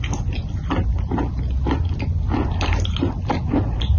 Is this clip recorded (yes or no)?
yes